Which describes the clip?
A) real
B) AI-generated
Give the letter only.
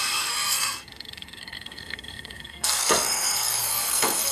B